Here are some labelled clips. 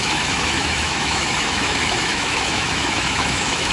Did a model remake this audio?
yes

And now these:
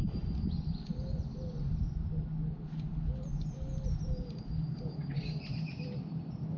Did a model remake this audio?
no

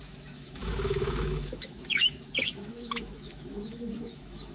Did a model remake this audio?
yes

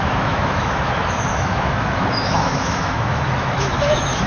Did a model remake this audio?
yes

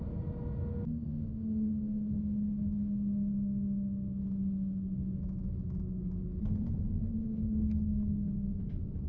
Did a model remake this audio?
no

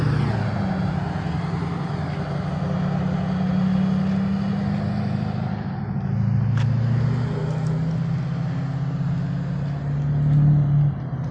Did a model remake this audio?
no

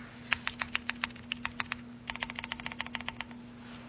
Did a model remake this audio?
no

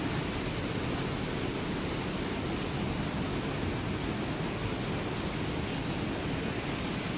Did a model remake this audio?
no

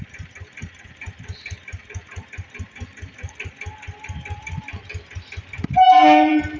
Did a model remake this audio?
no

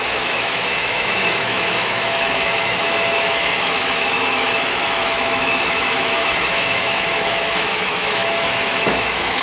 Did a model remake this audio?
yes